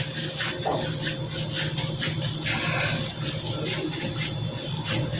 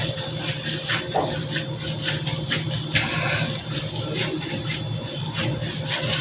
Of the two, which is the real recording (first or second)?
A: first